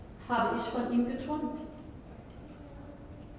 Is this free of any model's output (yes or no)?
yes